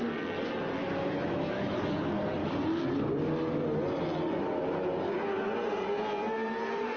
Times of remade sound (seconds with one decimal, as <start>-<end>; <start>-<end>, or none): 0.8-1.9